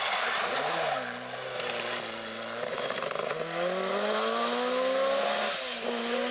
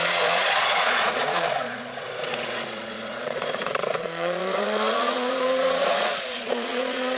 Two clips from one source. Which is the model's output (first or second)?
second